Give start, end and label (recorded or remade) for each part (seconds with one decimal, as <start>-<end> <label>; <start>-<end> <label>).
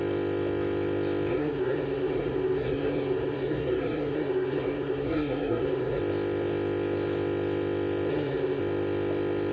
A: 0.0-1.3 recorded; 1.3-6.0 remade; 6.0-8.1 recorded; 8.1-8.6 remade; 8.6-9.5 recorded